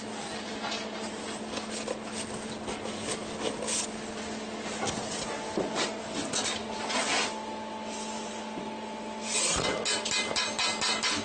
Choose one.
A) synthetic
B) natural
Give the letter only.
B